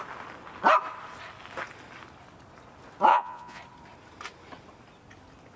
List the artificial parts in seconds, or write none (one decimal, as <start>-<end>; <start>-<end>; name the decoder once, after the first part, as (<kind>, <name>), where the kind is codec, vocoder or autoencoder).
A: 3.1-3.6 (vocoder, Vocos)